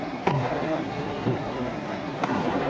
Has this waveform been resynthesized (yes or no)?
yes